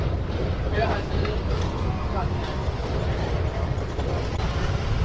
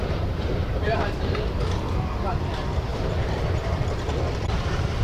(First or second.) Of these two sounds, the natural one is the first